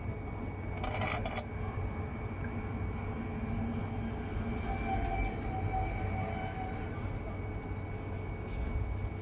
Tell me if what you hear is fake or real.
real